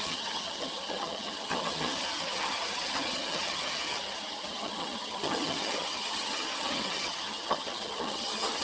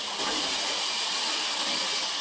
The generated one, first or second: first